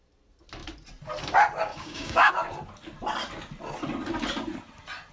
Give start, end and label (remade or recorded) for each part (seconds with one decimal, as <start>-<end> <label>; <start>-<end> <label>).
0.0-1.7 recorded; 1.7-2.3 remade; 2.3-5.1 recorded